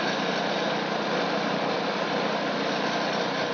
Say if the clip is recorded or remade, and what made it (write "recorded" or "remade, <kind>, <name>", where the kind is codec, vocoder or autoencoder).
recorded